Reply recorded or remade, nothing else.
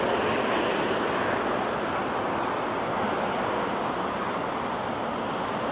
recorded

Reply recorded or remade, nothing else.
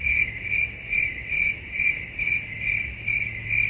recorded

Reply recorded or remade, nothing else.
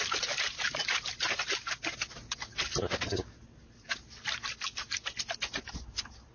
recorded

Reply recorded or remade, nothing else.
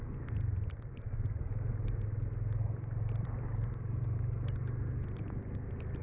recorded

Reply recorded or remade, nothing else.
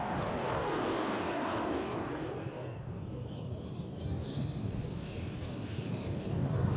remade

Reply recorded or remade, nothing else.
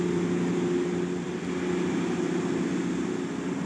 recorded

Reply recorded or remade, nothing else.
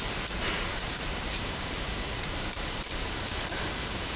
remade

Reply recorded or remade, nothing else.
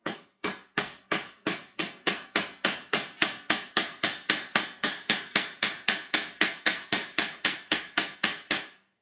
remade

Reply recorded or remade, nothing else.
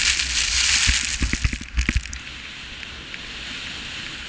recorded